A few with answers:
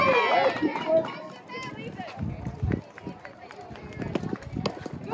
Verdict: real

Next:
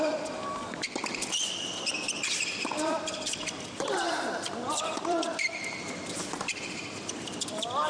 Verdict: fake